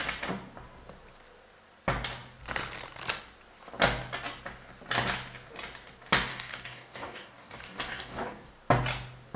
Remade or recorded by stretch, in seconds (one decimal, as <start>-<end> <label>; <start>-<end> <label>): 0.0-6.3 recorded; 6.3-8.5 remade; 8.5-9.4 recorded